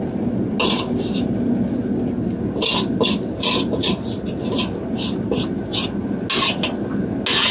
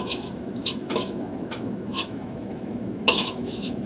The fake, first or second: second